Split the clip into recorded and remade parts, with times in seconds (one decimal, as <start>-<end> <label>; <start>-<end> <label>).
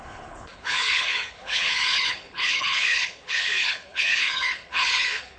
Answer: 0.0-5.4 remade